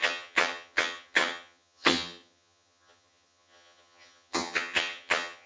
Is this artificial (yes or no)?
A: yes